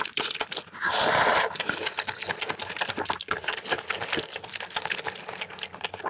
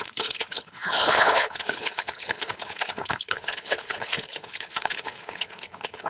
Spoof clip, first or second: second